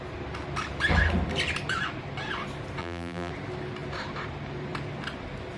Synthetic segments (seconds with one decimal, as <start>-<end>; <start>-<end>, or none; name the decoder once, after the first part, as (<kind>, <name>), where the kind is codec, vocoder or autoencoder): 2.8-3.3 (vocoder, BigVGAN v2)